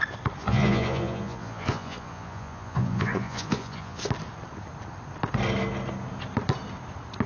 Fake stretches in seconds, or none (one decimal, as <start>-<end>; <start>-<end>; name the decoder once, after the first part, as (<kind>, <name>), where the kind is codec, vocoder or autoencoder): 0.4-4.0 (vocoder, Vocos)